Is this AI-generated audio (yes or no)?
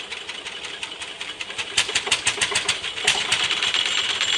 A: yes